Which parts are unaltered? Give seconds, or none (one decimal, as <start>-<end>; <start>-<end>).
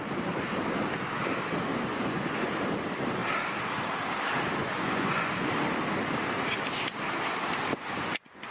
0.0-1.9; 2.5-4.6; 5.3-7.7